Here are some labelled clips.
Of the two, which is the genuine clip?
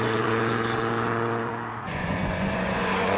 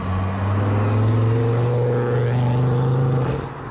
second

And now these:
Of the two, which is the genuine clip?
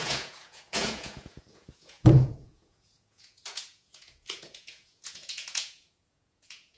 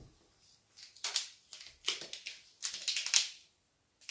second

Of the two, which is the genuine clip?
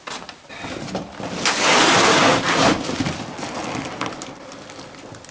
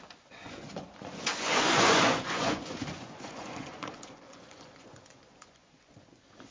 first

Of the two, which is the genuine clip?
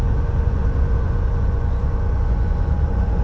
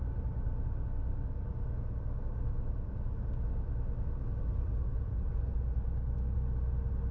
second